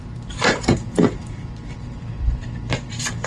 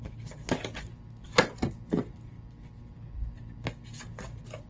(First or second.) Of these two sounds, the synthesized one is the first